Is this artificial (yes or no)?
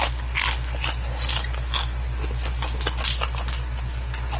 no